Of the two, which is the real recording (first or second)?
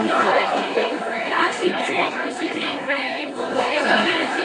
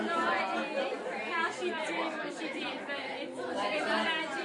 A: second